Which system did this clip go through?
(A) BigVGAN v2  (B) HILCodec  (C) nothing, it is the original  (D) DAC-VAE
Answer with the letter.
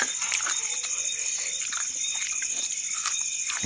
C